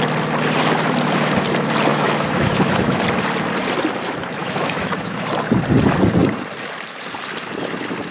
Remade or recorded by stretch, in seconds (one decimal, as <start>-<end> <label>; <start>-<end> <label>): 0.0-1.9 recorded; 1.9-3.0 remade; 3.0-4.4 recorded; 4.4-5.3 remade; 5.3-8.1 recorded